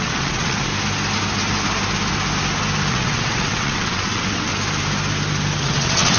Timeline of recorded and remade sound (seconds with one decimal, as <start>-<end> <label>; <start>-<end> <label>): 0.0-0.7 remade; 0.7-2.9 recorded; 2.9-4.5 remade; 4.5-5.6 recorded; 5.6-6.2 remade